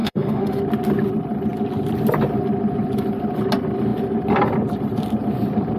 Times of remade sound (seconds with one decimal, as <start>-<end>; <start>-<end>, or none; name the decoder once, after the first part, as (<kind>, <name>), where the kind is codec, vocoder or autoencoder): 0.0-0.6 (autoencoder, DAC-VAE)

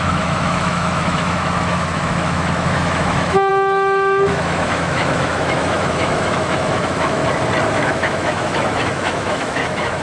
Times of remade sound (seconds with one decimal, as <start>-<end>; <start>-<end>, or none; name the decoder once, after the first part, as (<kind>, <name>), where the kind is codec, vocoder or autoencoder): 0.0-7.2 (autoencoder, DAC-VAE); 7.7-10.0

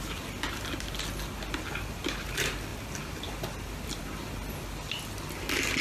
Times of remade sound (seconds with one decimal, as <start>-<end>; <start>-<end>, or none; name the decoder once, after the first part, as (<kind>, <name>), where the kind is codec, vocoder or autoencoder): none

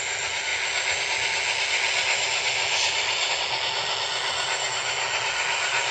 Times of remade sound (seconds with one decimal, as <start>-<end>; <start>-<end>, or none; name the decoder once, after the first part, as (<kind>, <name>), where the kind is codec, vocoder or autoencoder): none

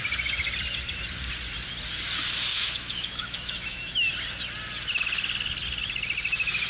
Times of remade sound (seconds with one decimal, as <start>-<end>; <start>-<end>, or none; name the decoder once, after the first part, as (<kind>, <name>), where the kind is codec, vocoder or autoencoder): 2.5-4.1 (autoencoder, DAC-VAE)

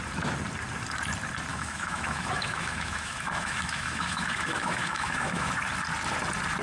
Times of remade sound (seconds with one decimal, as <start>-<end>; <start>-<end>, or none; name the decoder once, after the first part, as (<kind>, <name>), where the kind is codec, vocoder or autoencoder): 1.5-5.5 (autoencoder, DAC-VAE)

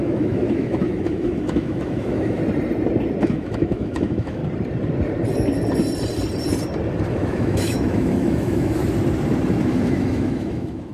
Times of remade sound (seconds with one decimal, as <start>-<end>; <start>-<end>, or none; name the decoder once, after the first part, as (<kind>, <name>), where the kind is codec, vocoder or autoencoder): 0.0-2.4 (autoencoder, DAC-VAE); 3.2-4.4; 7.1-8.8; 9.7-10.9